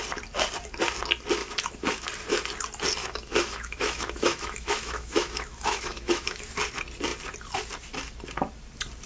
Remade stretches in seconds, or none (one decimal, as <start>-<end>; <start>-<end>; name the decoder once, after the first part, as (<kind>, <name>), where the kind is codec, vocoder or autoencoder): 1.4-2.1 (autoencoder, DAC-VAE); 3.0-6.5